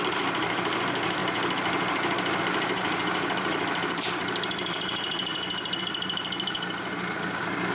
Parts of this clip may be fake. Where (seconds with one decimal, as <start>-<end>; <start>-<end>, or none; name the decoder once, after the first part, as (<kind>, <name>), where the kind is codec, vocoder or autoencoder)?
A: 0.0-1.2 (vocoder, BigVGAN v2); 2.4-7.7